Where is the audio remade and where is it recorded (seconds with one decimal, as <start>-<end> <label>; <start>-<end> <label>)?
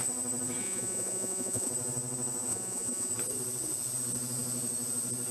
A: 0.0-0.6 recorded; 0.6-1.7 remade; 1.7-2.5 recorded; 2.5-3.1 remade; 3.1-5.3 recorded